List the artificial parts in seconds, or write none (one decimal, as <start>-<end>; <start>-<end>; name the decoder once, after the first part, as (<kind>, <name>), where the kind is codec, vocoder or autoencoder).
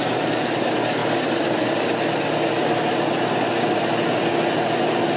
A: none